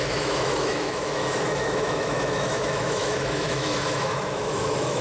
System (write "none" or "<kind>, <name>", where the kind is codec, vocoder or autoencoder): autoencoder, DAC-VAE